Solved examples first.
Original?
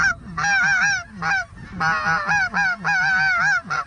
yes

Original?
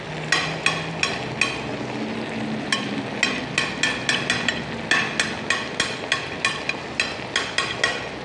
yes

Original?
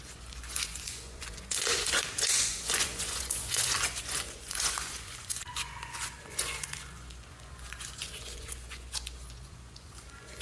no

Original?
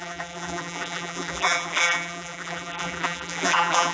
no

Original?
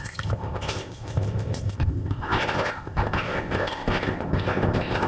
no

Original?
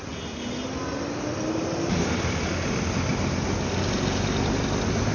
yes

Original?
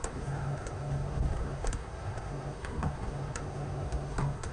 no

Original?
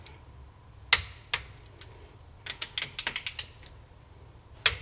yes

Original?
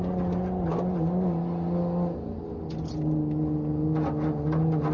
yes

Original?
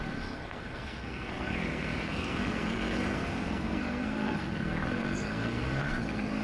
no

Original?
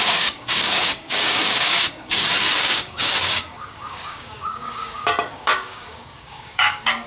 no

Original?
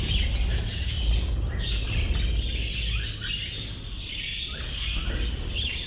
yes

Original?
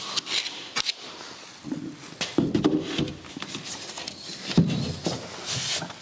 yes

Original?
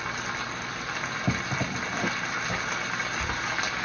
yes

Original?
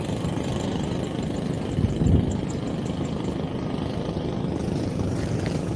yes